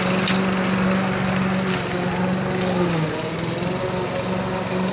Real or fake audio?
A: real